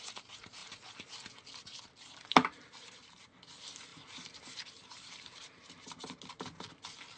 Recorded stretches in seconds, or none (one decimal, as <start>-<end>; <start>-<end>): 0.0-2.4; 3.2-3.9; 6.2-7.2